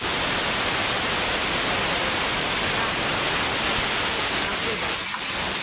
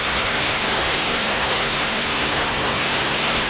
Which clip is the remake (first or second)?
second